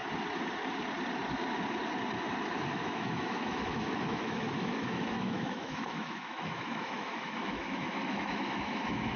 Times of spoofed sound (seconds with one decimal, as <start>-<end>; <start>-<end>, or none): 2.7-9.2